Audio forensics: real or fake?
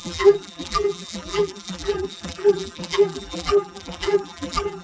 fake